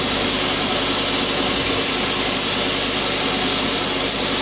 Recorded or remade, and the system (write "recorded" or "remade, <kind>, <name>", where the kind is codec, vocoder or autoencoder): recorded